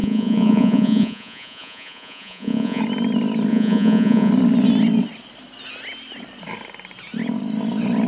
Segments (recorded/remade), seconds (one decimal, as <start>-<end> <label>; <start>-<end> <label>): 0.0-2.8 remade; 2.8-3.5 recorded; 3.5-4.3 remade; 4.3-8.1 recorded